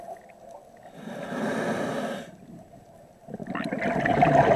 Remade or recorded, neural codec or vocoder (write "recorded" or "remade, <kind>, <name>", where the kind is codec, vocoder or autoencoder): recorded